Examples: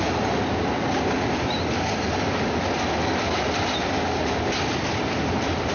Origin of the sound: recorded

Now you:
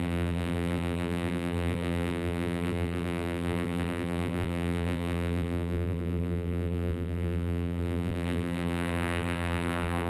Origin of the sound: remade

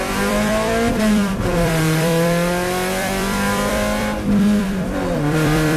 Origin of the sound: remade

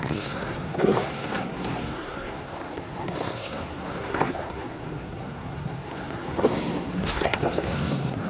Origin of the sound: remade